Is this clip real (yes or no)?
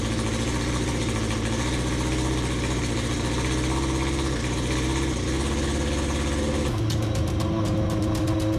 yes